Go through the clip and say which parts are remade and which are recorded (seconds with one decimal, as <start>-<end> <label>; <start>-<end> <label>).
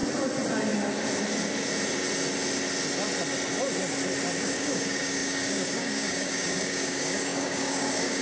0.0-4.4 recorded; 4.4-8.2 remade